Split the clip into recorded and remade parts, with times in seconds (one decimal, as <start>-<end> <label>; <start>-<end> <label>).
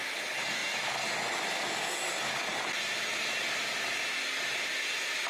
0.0-5.3 recorded